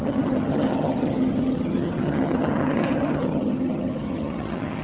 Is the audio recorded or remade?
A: remade